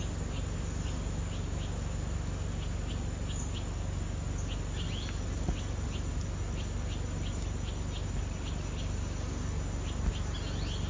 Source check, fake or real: real